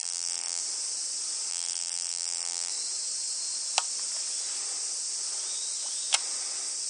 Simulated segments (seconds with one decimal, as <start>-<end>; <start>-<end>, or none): 0.0-0.6; 1.5-2.7